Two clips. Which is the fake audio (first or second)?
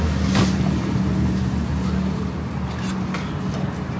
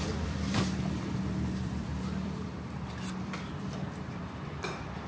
second